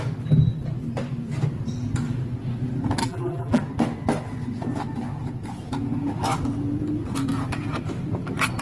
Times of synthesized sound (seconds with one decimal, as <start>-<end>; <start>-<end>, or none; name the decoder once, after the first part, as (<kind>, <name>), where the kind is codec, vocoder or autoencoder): 3.0-3.6 (vocoder, BigVGAN v2)